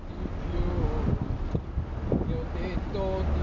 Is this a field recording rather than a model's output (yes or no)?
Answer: yes